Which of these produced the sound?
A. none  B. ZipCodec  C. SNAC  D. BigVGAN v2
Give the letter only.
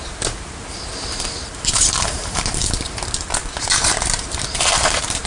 D